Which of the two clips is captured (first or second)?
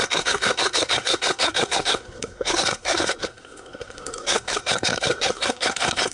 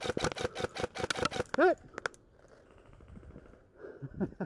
second